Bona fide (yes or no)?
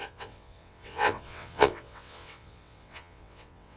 no